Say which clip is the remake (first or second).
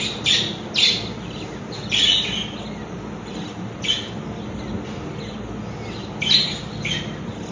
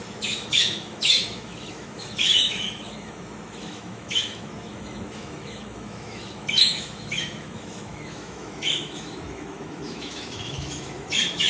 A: second